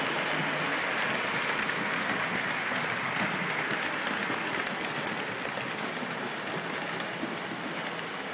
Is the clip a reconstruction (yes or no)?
no